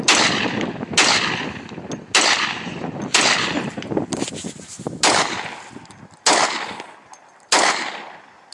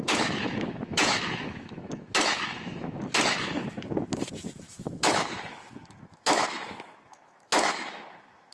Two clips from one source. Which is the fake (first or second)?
second